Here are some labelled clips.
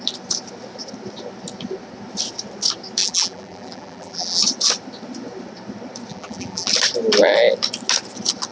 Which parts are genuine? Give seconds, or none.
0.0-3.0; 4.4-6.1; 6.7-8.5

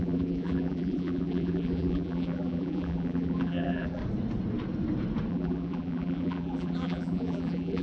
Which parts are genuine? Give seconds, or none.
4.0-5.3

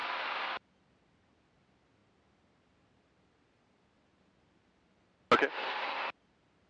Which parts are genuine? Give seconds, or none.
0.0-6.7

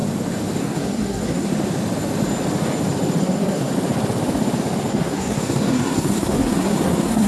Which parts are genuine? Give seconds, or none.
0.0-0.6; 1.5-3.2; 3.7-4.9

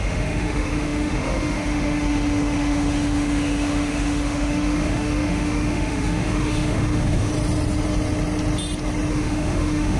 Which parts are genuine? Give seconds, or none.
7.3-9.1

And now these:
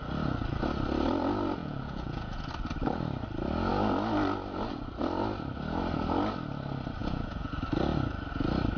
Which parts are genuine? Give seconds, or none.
0.0-1.6; 2.5-7.0; 7.5-8.8

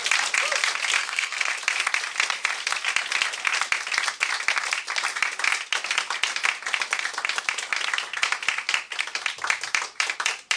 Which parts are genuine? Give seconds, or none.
0.0-1.0; 1.5-10.6

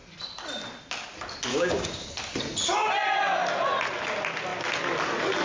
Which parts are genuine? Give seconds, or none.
0.0-1.5; 2.1-5.4